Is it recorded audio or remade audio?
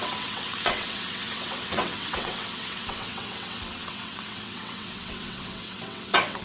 remade